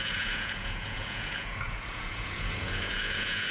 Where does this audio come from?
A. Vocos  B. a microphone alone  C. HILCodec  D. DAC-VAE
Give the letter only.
A